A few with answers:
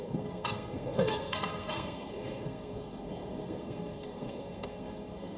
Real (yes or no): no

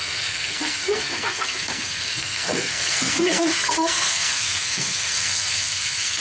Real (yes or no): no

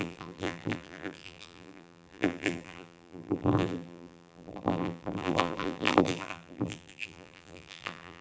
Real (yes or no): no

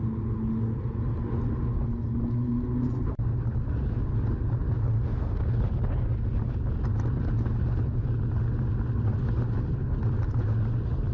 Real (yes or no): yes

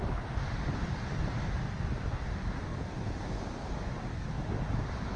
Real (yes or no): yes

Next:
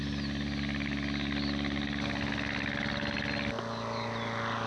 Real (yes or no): yes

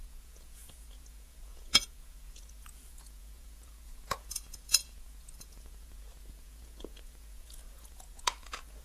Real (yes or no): no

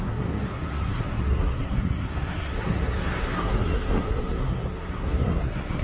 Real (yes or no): no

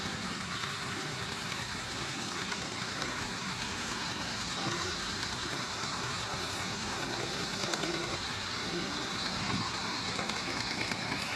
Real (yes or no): no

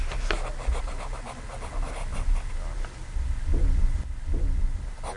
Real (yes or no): yes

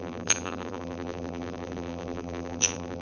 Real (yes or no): no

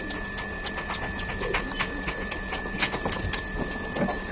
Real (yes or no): yes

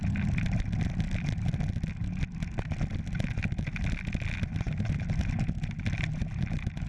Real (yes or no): yes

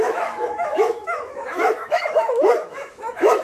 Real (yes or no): no